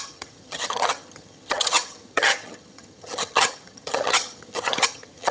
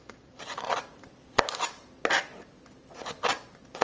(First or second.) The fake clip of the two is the first